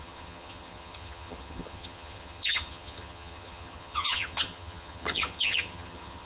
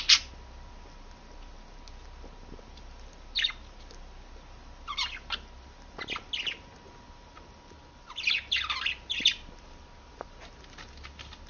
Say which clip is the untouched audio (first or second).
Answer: second